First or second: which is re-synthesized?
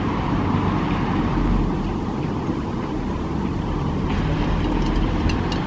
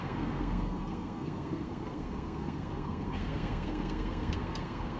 second